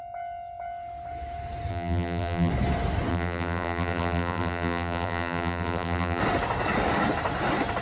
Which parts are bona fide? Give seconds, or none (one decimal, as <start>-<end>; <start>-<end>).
0.0-1.7; 2.5-3.1; 6.2-7.8